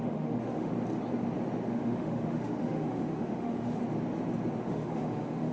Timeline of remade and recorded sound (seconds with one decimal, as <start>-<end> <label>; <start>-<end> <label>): 0.0-0.7 remade; 0.7-1.7 recorded; 1.7-3.8 remade; 3.8-4.6 recorded; 4.6-5.5 remade